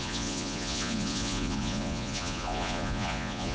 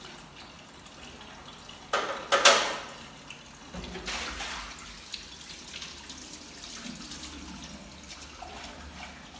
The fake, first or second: first